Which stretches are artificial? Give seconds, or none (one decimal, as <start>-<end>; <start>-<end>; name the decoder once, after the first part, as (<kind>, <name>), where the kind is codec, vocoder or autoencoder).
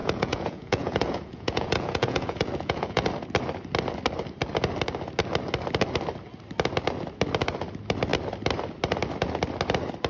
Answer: 0.0-3.1 (vocoder, Vocos)